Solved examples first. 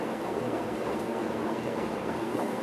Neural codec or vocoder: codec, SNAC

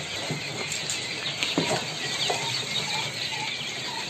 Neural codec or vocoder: none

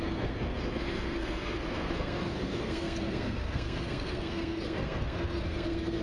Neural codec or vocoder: codec, SNAC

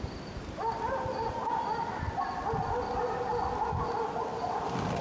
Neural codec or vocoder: none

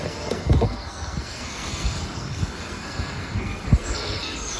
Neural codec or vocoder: codec, SNAC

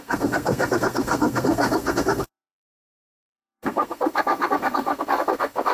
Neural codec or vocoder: codec, SNAC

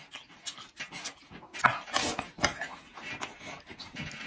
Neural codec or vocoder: none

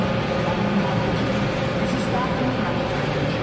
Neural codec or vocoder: none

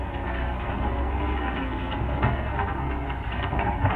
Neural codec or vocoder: codec, SNAC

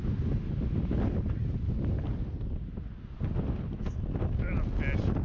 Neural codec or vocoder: none